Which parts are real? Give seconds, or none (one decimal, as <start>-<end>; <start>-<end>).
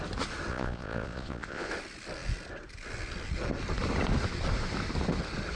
0.0-0.5; 1.7-5.6